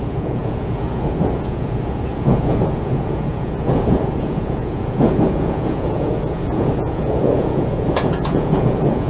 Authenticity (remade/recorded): remade